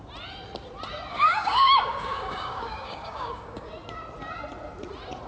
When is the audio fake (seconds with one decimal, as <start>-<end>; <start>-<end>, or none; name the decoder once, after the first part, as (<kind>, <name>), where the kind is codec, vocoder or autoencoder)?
1.1-3.7 (codec, DAC)